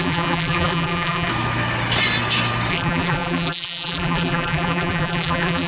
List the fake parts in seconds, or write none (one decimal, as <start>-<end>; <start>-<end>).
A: 0.0-1.3; 2.7-5.7